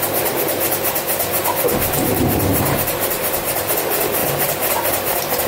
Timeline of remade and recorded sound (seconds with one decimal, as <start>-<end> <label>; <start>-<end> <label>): 0.0-2.5 recorded; 2.5-3.2 remade; 3.2-5.5 recorded